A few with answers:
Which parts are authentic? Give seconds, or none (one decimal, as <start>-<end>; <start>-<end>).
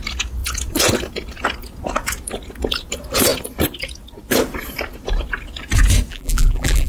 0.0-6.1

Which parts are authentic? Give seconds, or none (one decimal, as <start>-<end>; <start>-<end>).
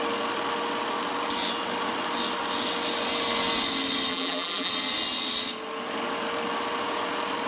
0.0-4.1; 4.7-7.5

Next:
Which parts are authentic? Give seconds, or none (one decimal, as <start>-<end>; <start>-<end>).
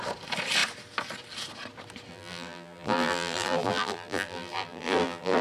0.0-2.1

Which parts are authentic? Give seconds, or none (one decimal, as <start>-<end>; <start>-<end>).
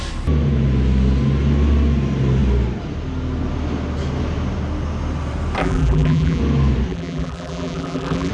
0.0-5.6; 6.4-6.9